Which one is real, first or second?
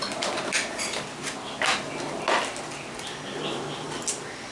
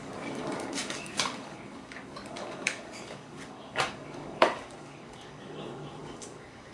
first